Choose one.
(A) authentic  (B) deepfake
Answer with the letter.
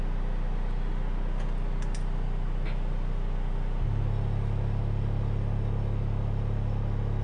A